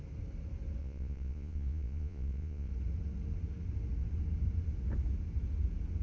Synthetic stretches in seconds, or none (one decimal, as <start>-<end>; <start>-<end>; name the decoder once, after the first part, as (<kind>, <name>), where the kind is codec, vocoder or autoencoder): 0.8-2.7 (vocoder, Vocos)